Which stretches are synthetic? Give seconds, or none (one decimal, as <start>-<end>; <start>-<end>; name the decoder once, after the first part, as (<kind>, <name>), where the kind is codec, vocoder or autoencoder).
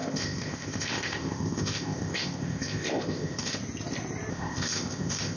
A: 0.0-3.6 (codec, ZipCodec); 4.3-5.4